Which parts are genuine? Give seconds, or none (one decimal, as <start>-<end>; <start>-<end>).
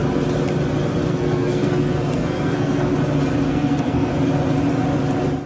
0.0-1.1; 2.9-3.5; 4.1-5.5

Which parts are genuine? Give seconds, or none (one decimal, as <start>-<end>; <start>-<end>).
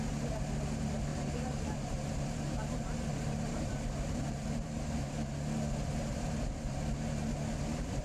0.0-1.1; 5.0-5.8; 6.5-8.0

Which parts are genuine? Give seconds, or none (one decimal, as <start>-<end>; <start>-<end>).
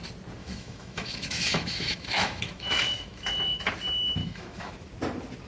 0.0-0.4; 3.7-4.2; 4.7-5.5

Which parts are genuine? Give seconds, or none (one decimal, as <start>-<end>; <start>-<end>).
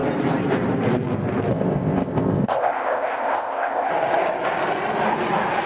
0.0-1.5; 3.9-5.7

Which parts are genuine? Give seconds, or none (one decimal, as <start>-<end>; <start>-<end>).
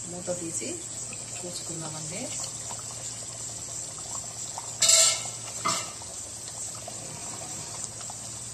0.0-1.6; 2.5-6.1; 6.8-7.2; 7.8-8.5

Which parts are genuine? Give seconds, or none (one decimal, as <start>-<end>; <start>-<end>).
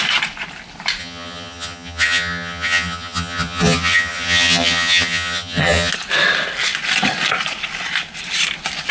0.0-1.0; 5.9-8.9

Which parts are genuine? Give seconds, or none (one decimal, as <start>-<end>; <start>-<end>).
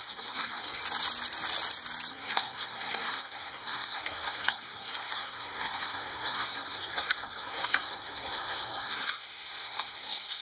0.8-2.1